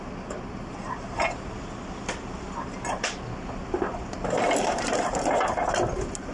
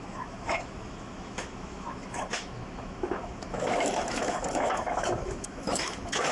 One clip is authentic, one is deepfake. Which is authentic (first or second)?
first